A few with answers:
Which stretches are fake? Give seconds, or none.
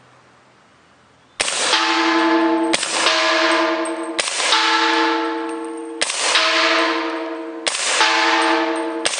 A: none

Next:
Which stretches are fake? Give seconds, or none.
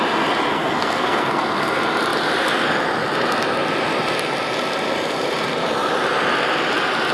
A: 0.5-1.6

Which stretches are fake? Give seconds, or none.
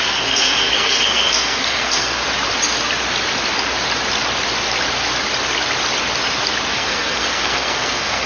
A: 0.0-2.2; 6.7-8.3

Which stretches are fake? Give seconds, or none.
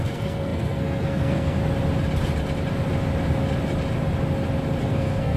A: 0.0-1.6; 4.8-5.4